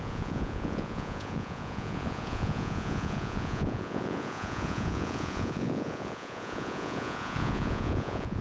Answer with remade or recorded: remade